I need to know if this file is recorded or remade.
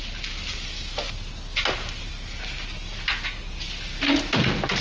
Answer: recorded